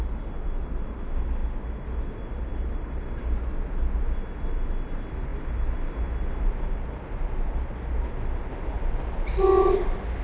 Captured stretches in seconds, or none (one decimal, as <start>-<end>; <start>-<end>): 0.0-10.2